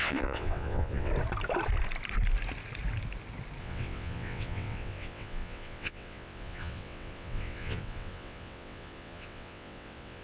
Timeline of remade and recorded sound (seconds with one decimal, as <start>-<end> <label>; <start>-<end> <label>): 0.0-1.1 remade; 1.1-3.6 recorded; 3.6-10.2 remade